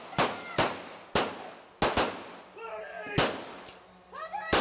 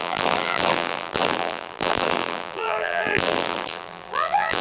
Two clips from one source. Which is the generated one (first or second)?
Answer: second